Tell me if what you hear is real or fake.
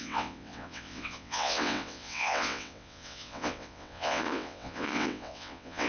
fake